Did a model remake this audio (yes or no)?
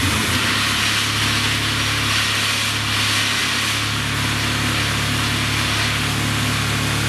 no